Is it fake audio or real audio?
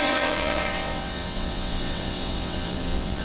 fake